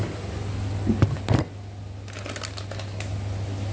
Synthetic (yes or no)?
no